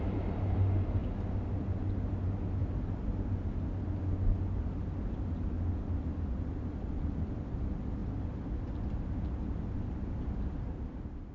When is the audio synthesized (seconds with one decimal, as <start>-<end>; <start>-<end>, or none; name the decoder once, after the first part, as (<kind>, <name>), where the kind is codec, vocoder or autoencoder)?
none